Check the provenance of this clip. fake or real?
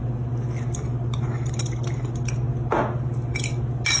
real